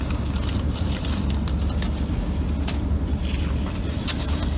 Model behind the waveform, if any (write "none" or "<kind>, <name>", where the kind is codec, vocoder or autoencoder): none